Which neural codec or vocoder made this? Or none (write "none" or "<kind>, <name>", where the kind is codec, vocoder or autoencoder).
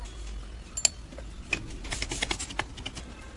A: none